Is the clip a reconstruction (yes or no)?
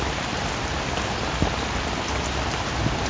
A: no